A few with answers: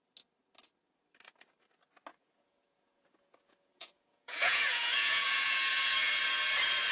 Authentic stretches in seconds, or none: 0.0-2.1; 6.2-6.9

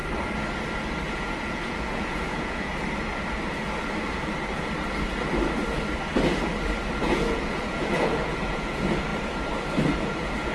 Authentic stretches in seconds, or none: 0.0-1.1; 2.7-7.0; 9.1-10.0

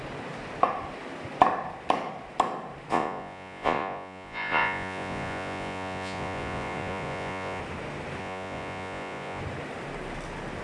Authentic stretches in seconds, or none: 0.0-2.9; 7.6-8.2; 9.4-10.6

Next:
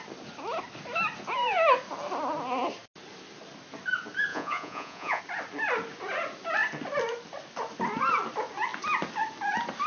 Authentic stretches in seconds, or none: 0.0-4.3; 5.2-9.9

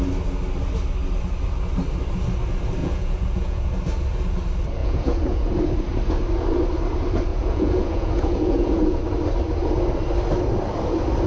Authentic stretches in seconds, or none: 0.0-2.8; 3.7-4.8; 5.5-7.3; 9.0-11.3